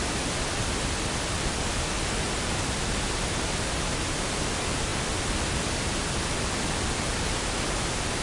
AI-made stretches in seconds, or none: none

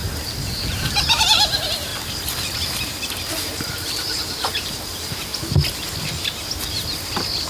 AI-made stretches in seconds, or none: 0.0-1.9; 3.3-5.3

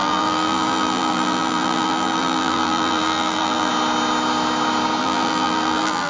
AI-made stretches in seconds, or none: 0.0-3.7; 5.0-6.1

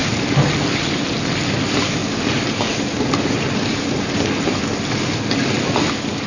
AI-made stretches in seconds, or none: none

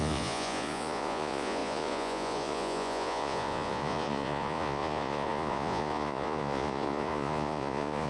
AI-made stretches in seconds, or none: 0.0-8.1

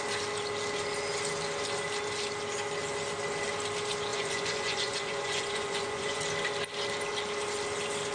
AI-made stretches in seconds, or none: 4.1-6.2